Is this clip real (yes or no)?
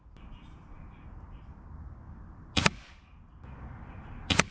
yes